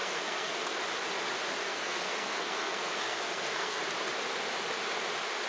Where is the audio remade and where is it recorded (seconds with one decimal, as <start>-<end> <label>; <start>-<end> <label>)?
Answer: 0.0-0.8 remade; 0.8-1.7 recorded; 1.7-3.8 remade; 3.8-5.5 recorded